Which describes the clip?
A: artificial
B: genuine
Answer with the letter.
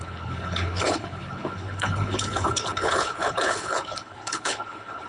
A